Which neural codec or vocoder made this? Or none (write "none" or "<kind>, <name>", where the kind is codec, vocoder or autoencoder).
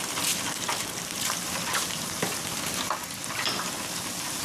none